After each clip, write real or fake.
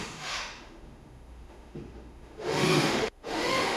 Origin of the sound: fake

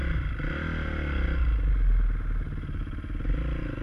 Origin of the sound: real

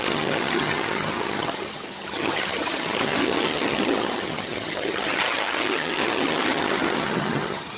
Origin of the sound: fake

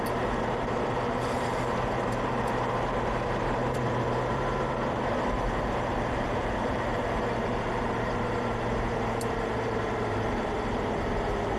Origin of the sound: fake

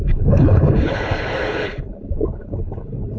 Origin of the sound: fake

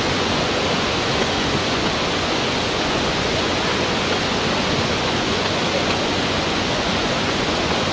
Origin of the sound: fake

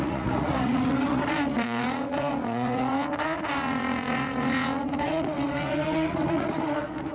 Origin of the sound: fake